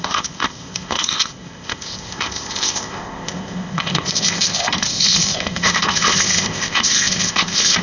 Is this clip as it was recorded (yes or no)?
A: no